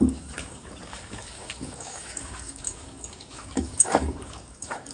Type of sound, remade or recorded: remade